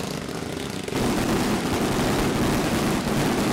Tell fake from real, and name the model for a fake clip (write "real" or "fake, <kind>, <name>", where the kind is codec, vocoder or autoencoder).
real